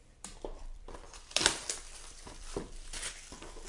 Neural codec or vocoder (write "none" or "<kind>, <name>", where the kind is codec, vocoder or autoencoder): vocoder, BigVGAN v2